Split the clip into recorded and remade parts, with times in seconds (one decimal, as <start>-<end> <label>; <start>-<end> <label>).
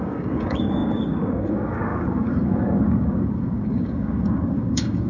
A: 0.0-5.1 remade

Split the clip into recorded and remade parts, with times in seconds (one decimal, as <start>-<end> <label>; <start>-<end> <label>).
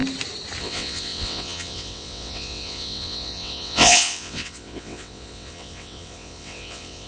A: 0.0-0.6 recorded; 0.6-7.1 remade